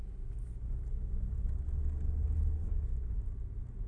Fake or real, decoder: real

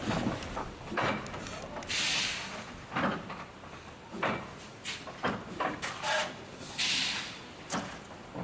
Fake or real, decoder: real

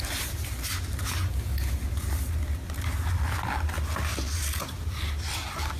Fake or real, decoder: real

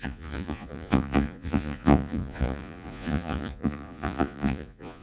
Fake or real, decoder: fake, vocoder, Vocos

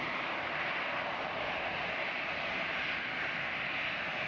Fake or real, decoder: real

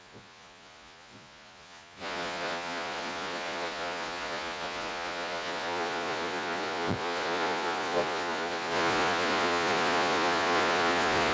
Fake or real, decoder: fake, vocoder, Vocos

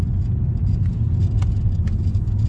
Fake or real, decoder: fake, vocoder, Vocos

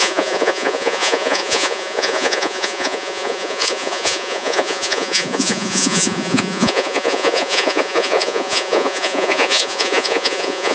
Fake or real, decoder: fake, vocoder, Vocos